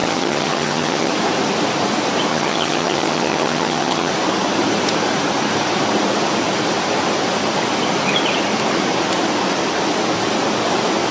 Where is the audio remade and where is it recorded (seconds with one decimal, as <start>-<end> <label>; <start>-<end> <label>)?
0.0-1.1 remade; 1.1-2.3 recorded; 2.3-4.1 remade; 4.1-11.1 recorded